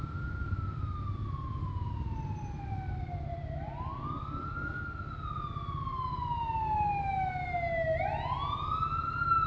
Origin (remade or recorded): recorded